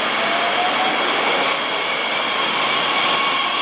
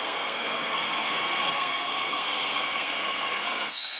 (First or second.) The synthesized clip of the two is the second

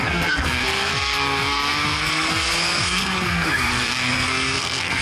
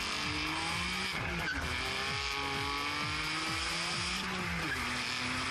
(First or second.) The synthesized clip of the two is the first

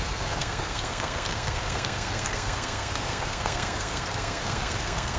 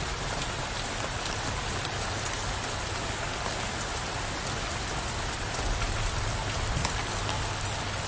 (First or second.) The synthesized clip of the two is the first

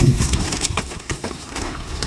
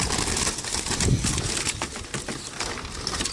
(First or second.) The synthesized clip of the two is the first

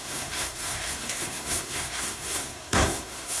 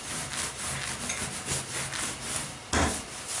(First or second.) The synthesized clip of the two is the first